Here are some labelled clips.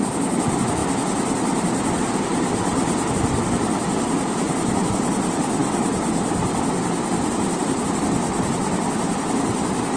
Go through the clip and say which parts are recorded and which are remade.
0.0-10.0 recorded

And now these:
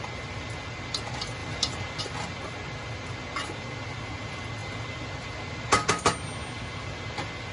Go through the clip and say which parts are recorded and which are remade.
0.0-7.5 recorded

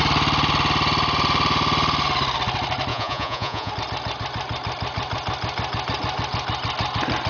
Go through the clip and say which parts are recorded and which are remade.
0.0-2.9 recorded; 2.9-3.7 remade; 3.7-7.3 recorded

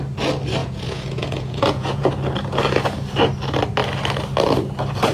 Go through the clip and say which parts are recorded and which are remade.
0.0-0.6 recorded; 0.6-2.1 remade; 2.1-5.1 recorded

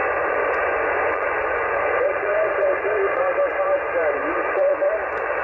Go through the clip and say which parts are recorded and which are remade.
0.0-3.2 remade; 3.2-4.2 recorded; 4.2-4.9 remade; 4.9-5.4 recorded